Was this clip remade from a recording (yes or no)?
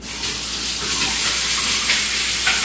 no